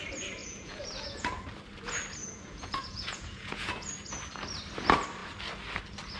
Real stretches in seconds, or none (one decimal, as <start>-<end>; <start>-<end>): 0.0-0.4; 1.4-2.2; 3.9-6.2